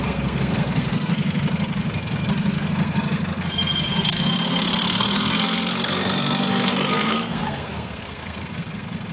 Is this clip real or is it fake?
fake